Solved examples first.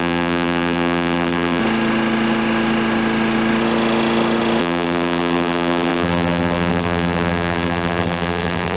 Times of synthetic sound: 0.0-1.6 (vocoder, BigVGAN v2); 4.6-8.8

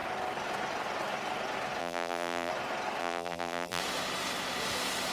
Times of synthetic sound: 1.8-2.5 (vocoder, BigVGAN v2); 3.0-3.8

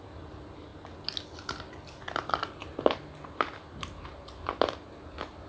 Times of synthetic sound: none

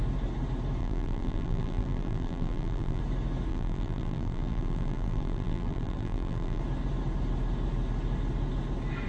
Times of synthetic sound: 0.8-3.0 (vocoder, BigVGAN v2); 3.5-6.6

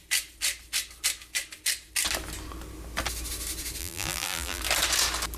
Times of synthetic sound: 3.8-4.6 (vocoder, BigVGAN v2)

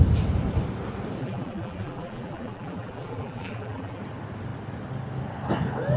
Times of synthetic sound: 1.2-4.0 (vocoder, BigVGAN v2)

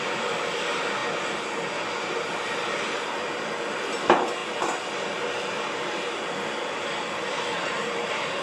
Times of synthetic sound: 0.0-1.0 (vocoder, BigVGAN v2); 2.7-8.4